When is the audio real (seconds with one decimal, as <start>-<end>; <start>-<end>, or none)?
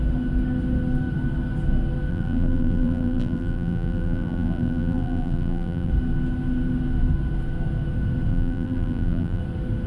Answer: 0.0-2.1; 5.9-8.3; 9.4-9.9